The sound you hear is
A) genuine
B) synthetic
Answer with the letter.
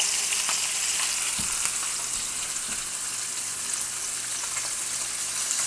A